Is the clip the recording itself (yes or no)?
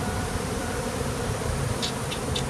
no